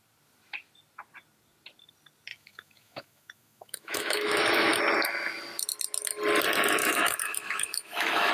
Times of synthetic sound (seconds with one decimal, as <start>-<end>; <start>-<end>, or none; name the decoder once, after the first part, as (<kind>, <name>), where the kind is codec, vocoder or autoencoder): 2.3-4.8 (autoencoder, DAC-VAE); 6.8-8.3